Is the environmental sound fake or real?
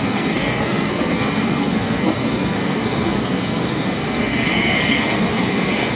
fake